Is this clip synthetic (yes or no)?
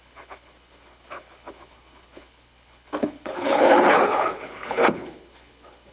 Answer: yes